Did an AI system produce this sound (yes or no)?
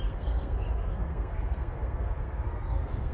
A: yes